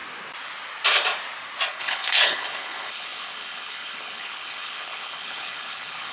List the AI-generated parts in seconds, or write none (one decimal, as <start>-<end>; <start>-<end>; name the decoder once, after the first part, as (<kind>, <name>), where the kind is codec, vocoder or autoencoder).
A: 1.7-6.1 (codec, HILCodec)